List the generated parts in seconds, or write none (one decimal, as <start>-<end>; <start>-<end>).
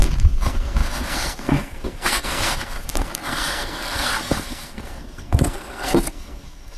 0.0-6.8